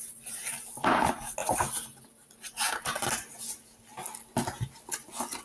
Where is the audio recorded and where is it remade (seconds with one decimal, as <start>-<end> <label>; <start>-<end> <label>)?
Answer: 0.0-5.4 recorded